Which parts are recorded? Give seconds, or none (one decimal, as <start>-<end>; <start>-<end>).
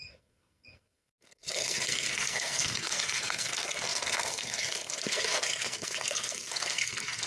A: none